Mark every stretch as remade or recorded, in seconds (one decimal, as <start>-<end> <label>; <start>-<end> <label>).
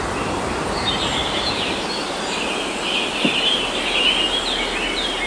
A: 0.0-5.3 recorded